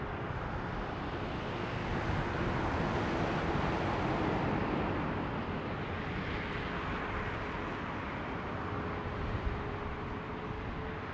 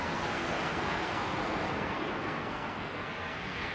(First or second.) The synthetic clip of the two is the second